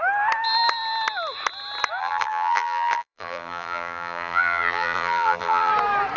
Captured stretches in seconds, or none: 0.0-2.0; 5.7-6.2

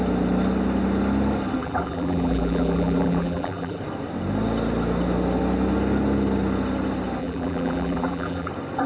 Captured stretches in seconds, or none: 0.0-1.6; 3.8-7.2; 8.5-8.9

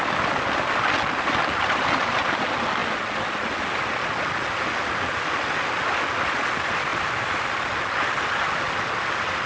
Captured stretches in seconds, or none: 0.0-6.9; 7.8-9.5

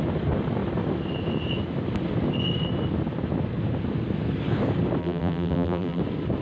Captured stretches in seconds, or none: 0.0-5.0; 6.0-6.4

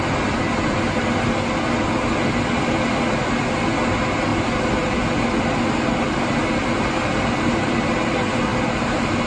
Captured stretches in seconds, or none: 0.0-9.3

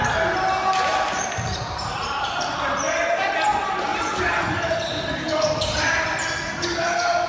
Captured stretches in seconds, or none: 0.0-0.9; 2.8-3.9; 4.8-7.3

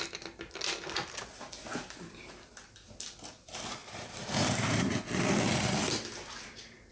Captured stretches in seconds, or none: 0.0-3.8; 4.9-6.9